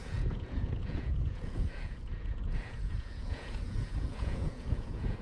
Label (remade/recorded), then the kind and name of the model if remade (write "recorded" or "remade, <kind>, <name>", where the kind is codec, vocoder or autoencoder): remade, vocoder, Vocos